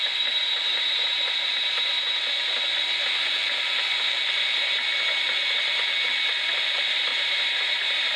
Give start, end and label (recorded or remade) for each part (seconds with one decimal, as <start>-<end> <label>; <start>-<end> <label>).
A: 0.0-2.2 remade; 2.2-7.1 recorded; 7.1-8.2 remade

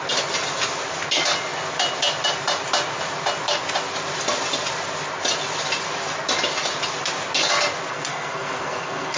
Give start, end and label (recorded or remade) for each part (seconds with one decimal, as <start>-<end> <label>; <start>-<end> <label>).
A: 0.0-7.9 recorded; 7.9-9.2 remade

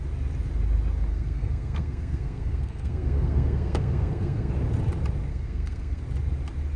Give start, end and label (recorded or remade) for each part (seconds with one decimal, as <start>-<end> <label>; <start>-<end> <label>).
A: 0.0-1.1 recorded; 1.1-4.5 remade; 4.5-5.3 recorded; 5.3-6.0 remade; 6.0-6.8 recorded

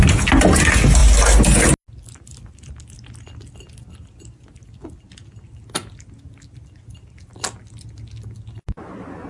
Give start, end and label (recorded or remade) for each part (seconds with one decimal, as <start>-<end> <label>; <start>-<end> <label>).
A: 0.0-9.3 recorded

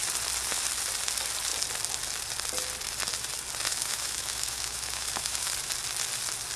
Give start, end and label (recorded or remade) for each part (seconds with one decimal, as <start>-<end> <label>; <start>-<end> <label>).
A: 0.0-3.7 recorded; 3.7-5.5 remade; 5.5-6.6 recorded